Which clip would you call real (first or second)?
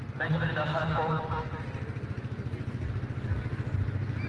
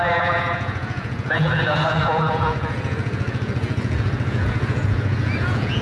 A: first